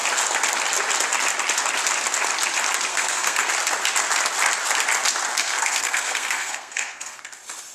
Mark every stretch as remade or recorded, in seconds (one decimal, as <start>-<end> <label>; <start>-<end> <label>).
0.0-2.9 recorded; 2.9-3.5 remade; 3.5-5.3 recorded; 5.3-7.2 remade; 7.2-7.7 recorded